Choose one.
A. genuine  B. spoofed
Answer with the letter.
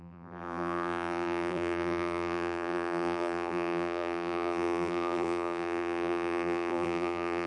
B